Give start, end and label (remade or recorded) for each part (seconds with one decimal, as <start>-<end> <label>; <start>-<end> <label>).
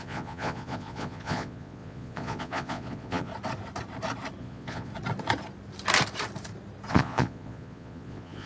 0.0-3.3 remade; 3.3-4.4 recorded; 4.4-4.9 remade; 4.9-6.9 recorded; 6.9-8.5 remade